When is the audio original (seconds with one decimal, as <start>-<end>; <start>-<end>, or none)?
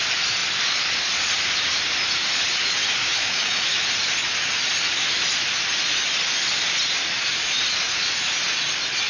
0.0-3.0; 3.8-9.1